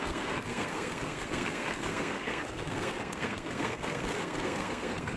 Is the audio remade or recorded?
remade